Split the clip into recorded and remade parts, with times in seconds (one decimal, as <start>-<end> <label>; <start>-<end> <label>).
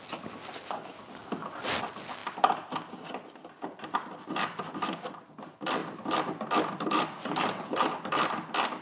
0.0-8.8 recorded